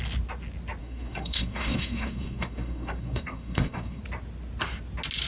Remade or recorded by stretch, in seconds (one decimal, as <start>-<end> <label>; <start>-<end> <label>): 0.0-0.8 recorded; 0.8-4.0 remade; 4.0-5.3 recorded